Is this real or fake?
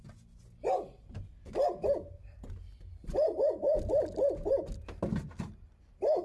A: real